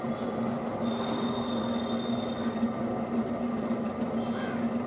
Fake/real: real